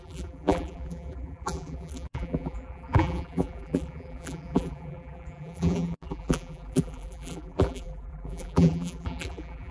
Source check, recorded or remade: remade